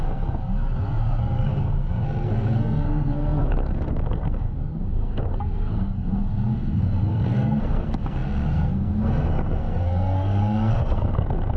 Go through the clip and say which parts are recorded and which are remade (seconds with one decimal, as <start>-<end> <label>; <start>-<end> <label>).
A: 0.0-0.4 remade; 0.4-1.0 recorded; 1.0-11.6 remade